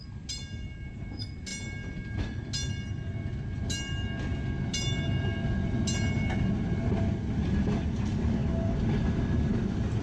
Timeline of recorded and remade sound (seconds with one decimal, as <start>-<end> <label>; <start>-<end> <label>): 0.0-10.0 recorded